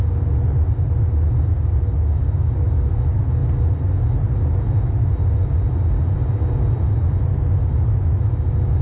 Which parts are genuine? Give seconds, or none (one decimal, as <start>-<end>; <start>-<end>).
0.0-8.8

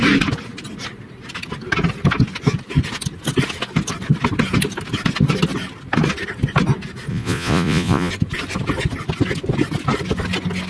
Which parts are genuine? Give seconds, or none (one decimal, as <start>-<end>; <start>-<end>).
0.0-7.1; 8.1-10.7

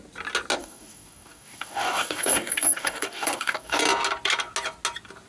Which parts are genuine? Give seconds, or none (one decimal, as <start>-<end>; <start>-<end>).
0.0-0.6; 3.8-5.3

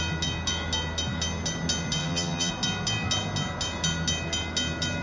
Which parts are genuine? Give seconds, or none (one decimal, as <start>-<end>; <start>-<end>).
0.0-2.0; 2.5-5.0